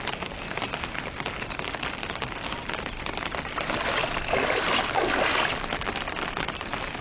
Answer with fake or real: real